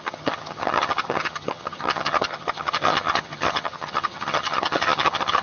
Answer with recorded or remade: remade